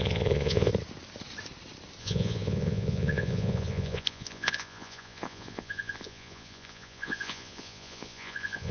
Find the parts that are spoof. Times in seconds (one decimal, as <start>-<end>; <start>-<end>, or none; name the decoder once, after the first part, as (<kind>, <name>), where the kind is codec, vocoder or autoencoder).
0.0-0.7 (vocoder, Vocos); 2.0-8.7